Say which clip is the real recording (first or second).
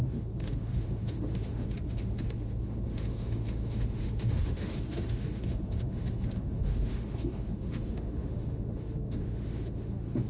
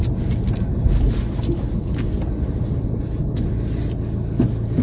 second